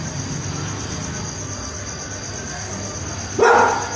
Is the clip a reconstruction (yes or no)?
no